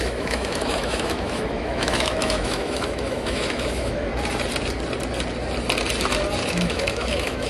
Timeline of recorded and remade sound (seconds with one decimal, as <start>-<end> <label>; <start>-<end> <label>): 0.0-4.1 remade; 4.1-6.5 recorded; 6.5-7.5 remade